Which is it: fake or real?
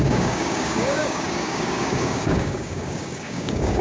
fake